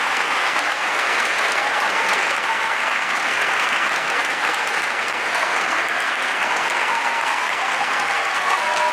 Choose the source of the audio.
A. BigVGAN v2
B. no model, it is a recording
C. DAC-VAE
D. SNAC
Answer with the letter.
D